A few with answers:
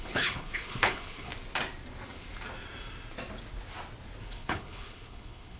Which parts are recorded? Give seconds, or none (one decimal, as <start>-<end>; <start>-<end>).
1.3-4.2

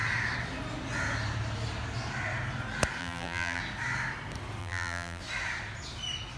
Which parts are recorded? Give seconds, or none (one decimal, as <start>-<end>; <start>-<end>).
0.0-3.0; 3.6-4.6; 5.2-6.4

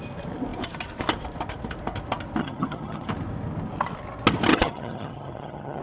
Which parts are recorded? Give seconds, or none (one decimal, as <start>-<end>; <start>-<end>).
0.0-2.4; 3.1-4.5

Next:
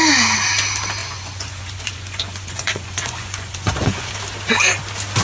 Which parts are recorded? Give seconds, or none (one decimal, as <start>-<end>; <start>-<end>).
0.0-1.0; 4.1-5.2

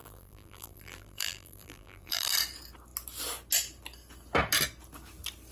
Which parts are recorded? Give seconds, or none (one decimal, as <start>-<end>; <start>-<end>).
2.3-5.5

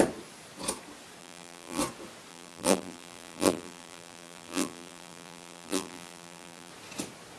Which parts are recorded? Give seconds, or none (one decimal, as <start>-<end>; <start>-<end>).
0.0-1.2; 1.8-2.3; 6.7-7.4

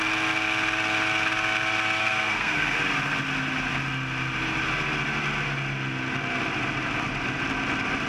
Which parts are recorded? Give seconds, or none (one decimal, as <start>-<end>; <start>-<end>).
0.0-2.0; 2.8-8.1